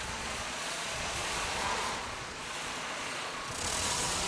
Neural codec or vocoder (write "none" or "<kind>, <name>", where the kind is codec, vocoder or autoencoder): vocoder, Vocos